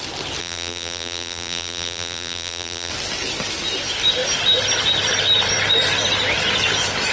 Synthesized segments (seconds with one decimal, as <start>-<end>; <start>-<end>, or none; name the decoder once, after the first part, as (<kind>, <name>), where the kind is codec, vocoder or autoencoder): 0.4-2.9 (vocoder, BigVGAN v2)